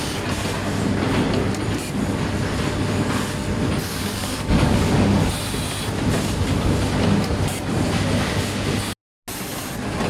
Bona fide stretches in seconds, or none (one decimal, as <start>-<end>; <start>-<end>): 0.0-3.9; 5.3-10.1